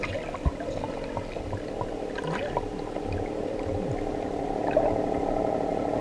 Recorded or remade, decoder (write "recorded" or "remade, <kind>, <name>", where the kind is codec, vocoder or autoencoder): recorded